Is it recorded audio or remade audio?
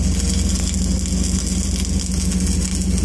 recorded